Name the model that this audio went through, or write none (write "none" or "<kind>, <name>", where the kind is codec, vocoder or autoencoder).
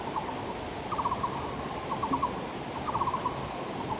none